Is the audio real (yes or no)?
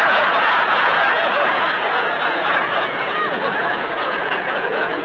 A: no